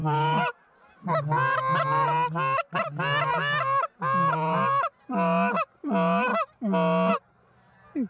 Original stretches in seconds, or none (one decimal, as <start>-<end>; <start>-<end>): 0.0-8.1